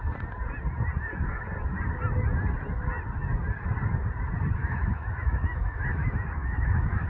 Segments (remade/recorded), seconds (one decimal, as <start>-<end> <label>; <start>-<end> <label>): 0.0-4.6 recorded; 4.6-7.1 remade

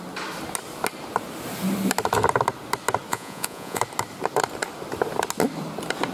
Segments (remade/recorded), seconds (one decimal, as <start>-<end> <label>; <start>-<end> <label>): 0.0-3.1 recorded; 3.1-3.8 remade; 3.8-6.1 recorded

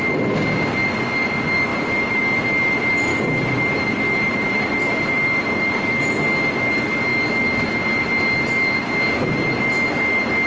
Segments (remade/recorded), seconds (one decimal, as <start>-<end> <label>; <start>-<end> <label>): 0.0-1.7 recorded; 1.7-2.2 remade; 2.2-3.1 recorded; 3.1-6.0 remade; 6.0-10.5 recorded